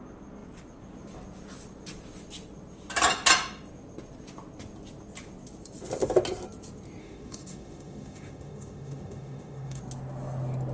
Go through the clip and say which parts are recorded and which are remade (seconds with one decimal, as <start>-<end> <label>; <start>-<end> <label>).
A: 0.0-7.0 recorded; 7.0-9.8 remade; 9.8-10.7 recorded